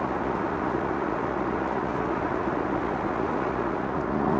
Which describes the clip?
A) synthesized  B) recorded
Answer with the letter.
A